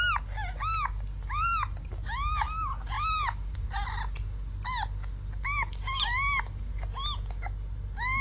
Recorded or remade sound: recorded